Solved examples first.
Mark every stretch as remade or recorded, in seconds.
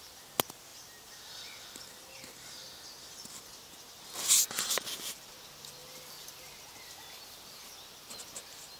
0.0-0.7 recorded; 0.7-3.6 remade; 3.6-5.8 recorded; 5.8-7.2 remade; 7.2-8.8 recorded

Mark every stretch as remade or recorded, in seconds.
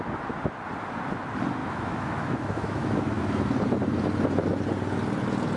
0.0-1.6 recorded; 1.6-3.2 remade; 3.2-5.6 recorded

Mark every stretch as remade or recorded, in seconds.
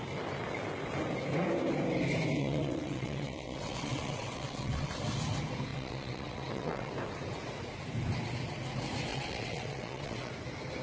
0.0-2.4 recorded; 2.4-4.9 remade; 4.9-5.7 recorded; 5.7-6.9 remade; 6.9-9.1 recorded; 9.1-10.3 remade; 10.3-10.8 recorded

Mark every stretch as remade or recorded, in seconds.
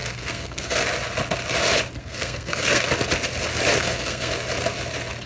0.0-0.8 remade; 0.8-2.0 recorded; 2.0-2.9 remade; 2.9-3.8 recorded; 3.8-4.3 remade; 4.3-5.3 recorded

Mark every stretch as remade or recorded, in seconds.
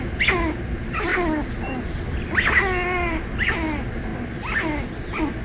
0.0-5.4 recorded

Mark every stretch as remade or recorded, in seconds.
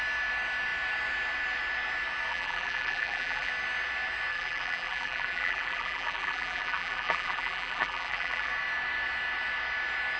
0.0-2.3 recorded; 2.3-3.5 remade; 3.5-4.3 recorded; 4.3-8.5 remade; 8.5-10.2 recorded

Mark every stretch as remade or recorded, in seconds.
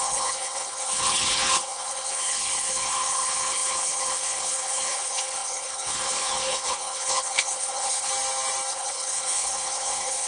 0.0-8.1 remade; 8.1-8.7 recorded; 8.7-10.3 remade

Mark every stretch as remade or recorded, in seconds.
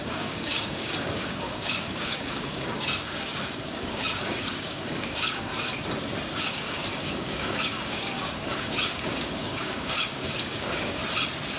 0.0-5.5 remade; 5.5-6.4 recorded; 6.4-11.0 remade; 11.0-11.6 recorded